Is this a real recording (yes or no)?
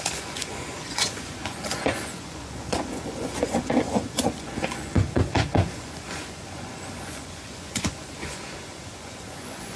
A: no